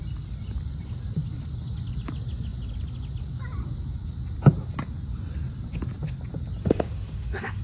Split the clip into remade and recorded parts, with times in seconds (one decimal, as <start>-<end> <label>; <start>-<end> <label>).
0.0-6.6 recorded; 6.6-7.6 remade